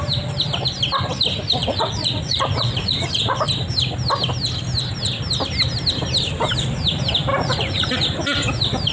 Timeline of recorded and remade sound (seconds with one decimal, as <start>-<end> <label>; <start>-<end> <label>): 0.0-1.6 recorded; 1.6-3.5 remade; 3.5-7.3 recorded; 7.3-7.9 remade; 7.9-8.9 recorded